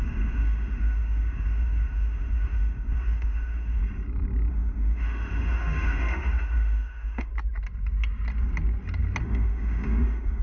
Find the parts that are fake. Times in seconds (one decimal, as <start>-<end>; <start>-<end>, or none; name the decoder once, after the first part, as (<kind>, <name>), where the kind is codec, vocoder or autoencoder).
0.0-3.8 (autoencoder, DAC-VAE); 4.5-7.3; 9.2-10.4